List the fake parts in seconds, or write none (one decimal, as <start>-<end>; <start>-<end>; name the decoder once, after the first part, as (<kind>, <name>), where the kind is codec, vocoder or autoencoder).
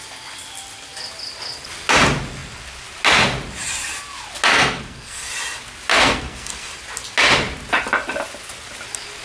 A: 4.5-5.3 (codec, SNAC); 5.9-6.7